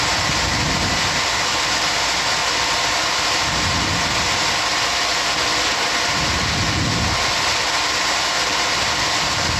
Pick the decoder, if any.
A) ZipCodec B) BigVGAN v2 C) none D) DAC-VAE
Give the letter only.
C